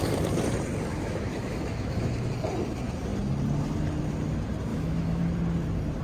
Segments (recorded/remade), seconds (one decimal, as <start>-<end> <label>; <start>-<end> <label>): 0.0-0.9 recorded; 0.9-2.3 remade; 2.3-4.7 recorded; 4.7-5.2 remade; 5.2-6.0 recorded